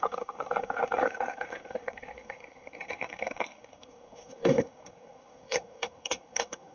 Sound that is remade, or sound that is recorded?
remade